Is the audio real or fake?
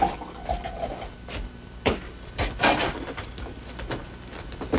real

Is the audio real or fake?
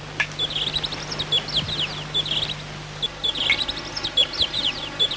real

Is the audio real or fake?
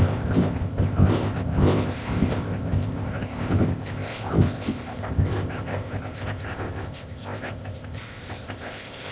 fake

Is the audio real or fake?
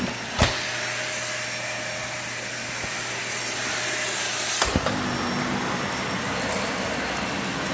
real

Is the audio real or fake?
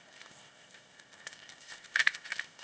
fake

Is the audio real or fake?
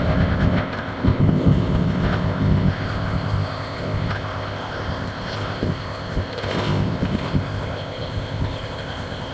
fake